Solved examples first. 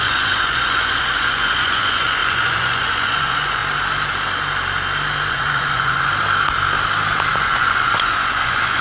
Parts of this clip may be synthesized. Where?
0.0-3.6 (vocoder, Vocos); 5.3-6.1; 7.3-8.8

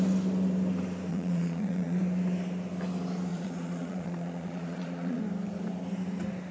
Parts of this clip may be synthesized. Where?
1.1-2.0 (vocoder, Vocos); 3.3-5.2

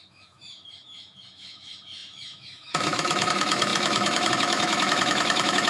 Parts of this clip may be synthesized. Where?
0.0-5.7 (autoencoder, DAC-VAE)

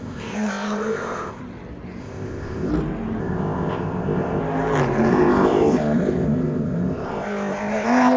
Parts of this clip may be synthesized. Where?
0.0-1.4 (codec, ZipCodec); 2.0-2.7; 3.2-4.4; 5.1-8.2

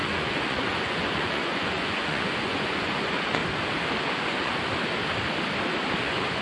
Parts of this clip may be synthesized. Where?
0.0-3.4 (vocoder, Vocos); 4.0-4.5; 6.0-6.4